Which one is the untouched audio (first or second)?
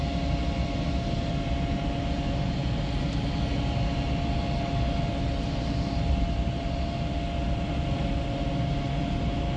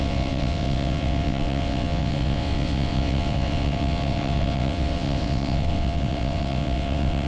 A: first